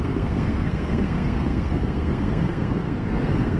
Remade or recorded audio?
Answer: remade